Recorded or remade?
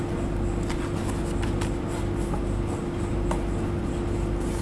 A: recorded